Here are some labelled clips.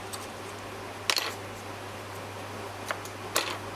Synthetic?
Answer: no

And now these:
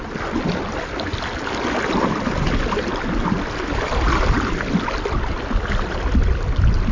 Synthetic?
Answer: no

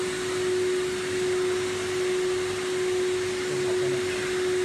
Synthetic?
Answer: no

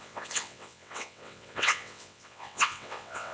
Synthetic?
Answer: yes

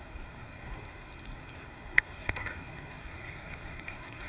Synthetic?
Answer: yes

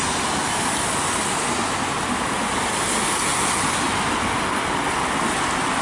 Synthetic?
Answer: no